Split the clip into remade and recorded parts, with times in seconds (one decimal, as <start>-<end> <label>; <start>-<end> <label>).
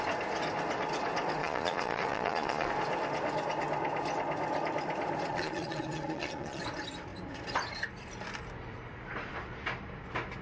0.0-1.4 recorded; 1.4-2.7 remade; 2.7-5.3 recorded; 5.3-6.6 remade; 6.6-10.4 recorded